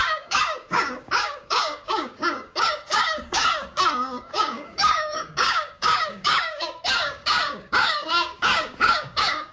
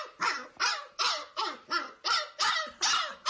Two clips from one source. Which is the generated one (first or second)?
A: first